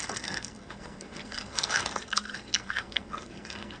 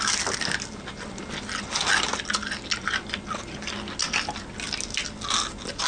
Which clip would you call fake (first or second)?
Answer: first